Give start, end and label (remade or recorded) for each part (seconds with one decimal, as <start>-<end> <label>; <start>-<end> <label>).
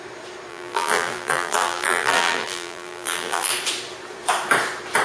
0.0-0.5 recorded; 0.5-3.5 remade; 3.5-5.0 recorded